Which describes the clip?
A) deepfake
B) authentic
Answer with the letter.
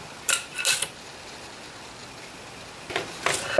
B